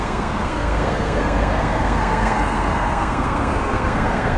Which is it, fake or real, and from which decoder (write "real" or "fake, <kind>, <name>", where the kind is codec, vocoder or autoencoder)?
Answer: fake, codec, SNAC